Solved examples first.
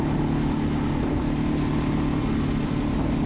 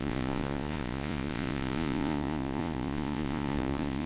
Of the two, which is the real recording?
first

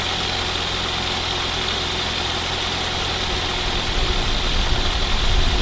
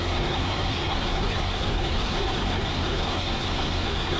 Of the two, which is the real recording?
first